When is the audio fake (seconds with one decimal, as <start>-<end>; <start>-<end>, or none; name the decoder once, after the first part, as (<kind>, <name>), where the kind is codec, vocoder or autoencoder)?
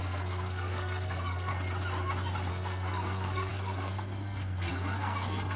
0.0-1.5 (codec, SNAC); 2.5-5.6